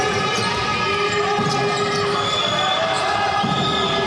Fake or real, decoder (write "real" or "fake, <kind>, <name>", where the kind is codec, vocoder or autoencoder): real